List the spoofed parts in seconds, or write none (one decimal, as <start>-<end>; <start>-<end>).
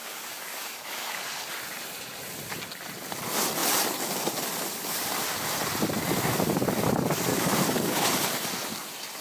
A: 0.0-1.5; 7.3-8.1